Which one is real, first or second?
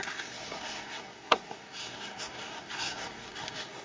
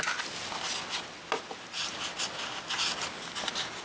second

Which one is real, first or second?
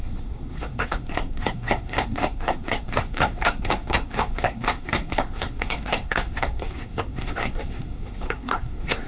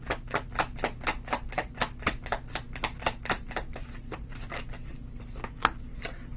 second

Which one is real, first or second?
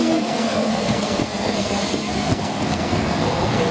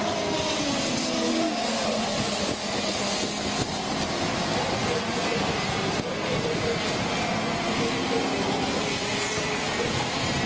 second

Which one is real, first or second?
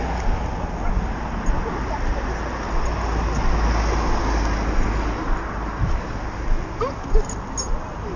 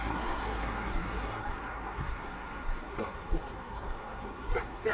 first